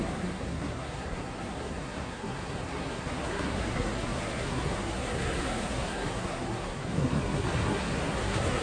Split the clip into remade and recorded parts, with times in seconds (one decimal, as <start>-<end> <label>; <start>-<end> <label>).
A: 0.0-8.6 remade